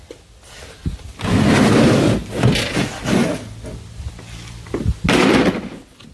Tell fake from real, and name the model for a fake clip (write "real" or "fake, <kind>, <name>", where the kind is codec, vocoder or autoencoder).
real